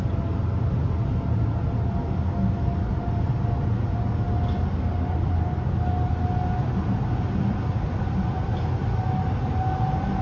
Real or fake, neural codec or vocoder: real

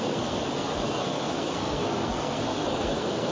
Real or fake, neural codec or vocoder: fake, codec, SNAC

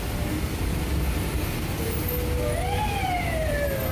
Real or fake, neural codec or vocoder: real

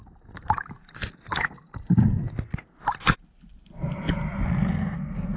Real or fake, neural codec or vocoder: real